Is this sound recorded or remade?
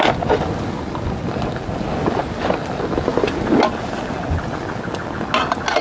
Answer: recorded